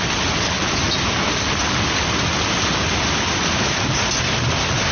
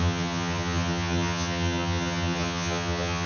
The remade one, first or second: second